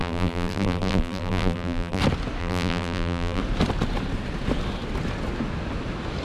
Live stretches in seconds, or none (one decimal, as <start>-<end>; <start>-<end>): 2.0-2.4; 3.4-6.2